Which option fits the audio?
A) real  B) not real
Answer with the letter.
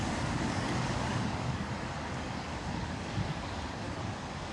B